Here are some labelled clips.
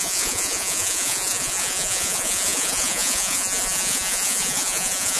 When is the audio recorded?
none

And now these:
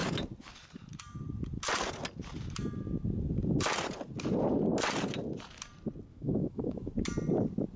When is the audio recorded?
0.0-6.1; 6.9-7.8

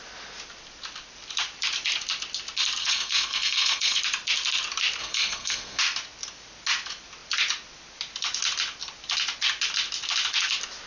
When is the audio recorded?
0.0-2.8; 4.0-5.0; 5.8-10.9

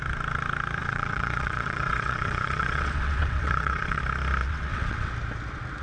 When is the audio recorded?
0.0-0.8; 4.0-4.4; 5.1-5.8

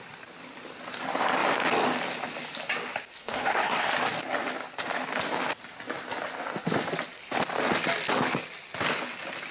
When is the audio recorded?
0.0-3.2; 3.9-9.5